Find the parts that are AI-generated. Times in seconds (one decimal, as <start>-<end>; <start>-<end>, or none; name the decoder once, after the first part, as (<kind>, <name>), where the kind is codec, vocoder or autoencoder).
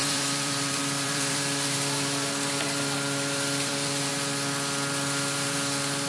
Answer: 0.0-4.1 (vocoder, BigVGAN v2)